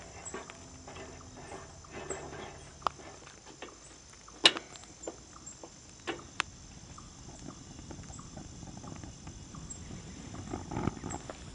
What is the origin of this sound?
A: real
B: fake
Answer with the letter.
A